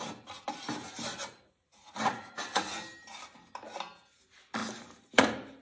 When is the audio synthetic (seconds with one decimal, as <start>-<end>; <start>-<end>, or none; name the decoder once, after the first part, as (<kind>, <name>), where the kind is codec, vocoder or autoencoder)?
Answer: 1.2-2.6 (vocoder, Vocos)